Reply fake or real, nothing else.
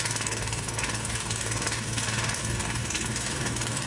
fake